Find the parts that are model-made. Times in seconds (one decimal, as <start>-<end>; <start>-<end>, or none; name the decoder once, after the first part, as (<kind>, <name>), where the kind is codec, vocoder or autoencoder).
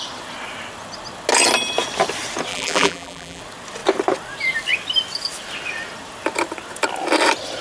2.5-3.4 (vocoder, BigVGAN v2)